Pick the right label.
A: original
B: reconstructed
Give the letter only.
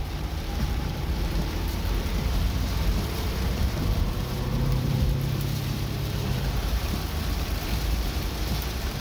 B